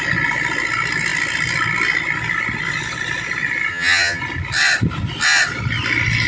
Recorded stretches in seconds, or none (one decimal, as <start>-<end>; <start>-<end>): 0.0-3.7; 4.2-6.3